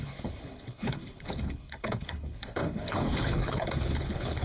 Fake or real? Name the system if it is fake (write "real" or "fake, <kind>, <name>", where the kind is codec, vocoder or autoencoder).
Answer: fake, codec, HILCodec